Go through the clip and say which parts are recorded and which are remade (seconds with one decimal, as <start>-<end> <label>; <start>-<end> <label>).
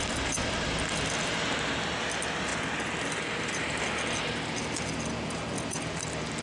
0.0-6.4 recorded